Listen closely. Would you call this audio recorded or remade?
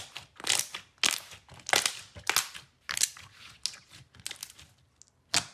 recorded